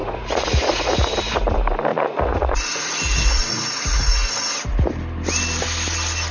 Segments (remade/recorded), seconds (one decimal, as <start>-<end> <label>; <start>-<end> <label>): 0.0-1.3 remade; 1.3-1.9 recorded; 1.9-4.3 remade; 4.3-6.3 recorded